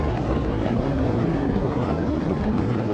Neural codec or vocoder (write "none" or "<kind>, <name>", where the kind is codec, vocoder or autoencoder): codec, SNAC